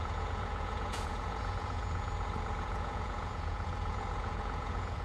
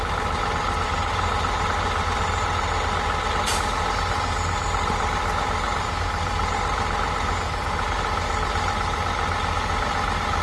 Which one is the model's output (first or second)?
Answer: first